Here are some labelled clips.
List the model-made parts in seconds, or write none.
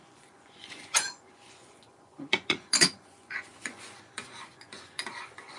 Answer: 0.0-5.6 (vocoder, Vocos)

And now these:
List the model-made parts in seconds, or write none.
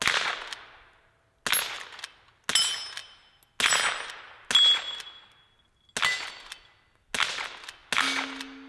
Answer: none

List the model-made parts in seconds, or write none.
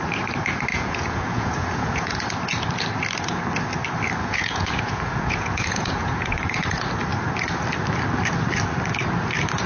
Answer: 0.7-2.2 (vocoder, Vocos); 4.2-6.5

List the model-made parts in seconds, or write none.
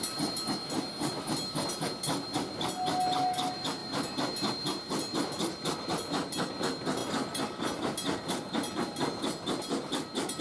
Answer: none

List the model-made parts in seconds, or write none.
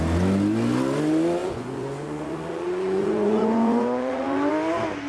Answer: 1.4-4.5 (vocoder, Vocos)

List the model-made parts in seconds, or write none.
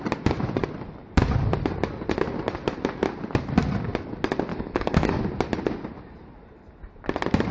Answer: 4.5-5.2 (codec, DAC)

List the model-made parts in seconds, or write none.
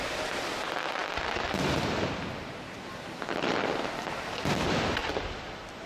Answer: 0.0-5.0 (vocoder, BigVGAN v2)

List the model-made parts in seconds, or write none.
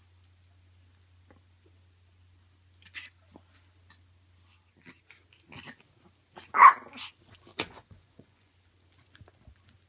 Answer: 7.5-8.5 (vocoder, Vocos)